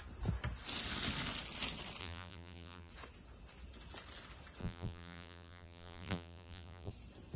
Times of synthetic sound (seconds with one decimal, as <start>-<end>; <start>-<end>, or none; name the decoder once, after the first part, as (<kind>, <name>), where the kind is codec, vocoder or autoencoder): 2.0-2.9 (vocoder, BigVGAN v2); 4.6-6.9